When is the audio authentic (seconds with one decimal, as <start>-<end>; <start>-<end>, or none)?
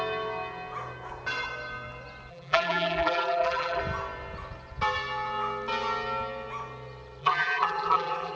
0.0-2.3; 3.8-7.2